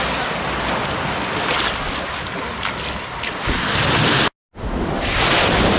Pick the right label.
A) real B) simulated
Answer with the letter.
A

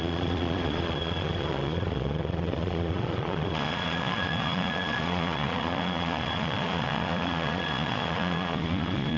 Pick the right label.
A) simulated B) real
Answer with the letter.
A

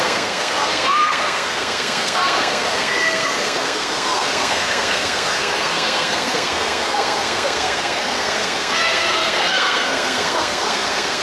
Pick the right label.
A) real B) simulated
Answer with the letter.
B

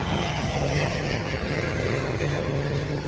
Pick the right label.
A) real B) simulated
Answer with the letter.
B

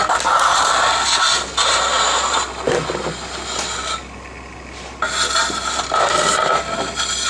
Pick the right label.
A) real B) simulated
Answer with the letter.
A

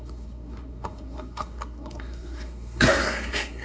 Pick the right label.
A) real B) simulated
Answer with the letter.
B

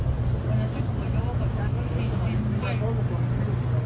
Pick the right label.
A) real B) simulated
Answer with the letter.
A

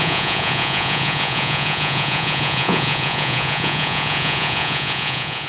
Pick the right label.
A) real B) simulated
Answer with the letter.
B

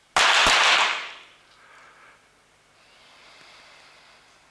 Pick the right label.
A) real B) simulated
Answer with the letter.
A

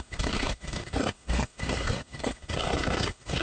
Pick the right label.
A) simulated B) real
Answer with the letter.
A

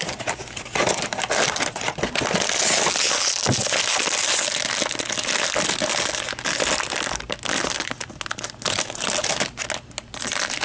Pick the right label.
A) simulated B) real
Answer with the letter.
B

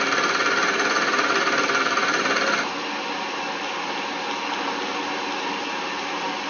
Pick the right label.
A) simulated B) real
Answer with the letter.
B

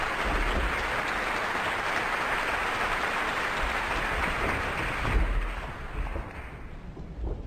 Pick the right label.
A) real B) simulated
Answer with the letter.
A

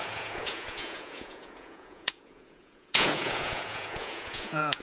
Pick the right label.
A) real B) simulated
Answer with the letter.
B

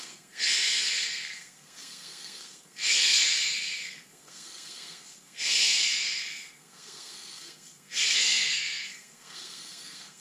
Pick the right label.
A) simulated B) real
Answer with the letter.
A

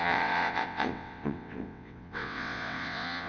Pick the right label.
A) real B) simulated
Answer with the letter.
B